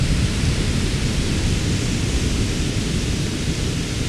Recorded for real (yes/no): yes